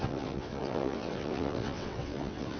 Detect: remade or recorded remade